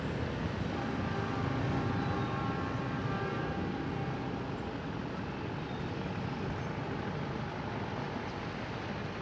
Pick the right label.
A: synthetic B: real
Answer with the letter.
B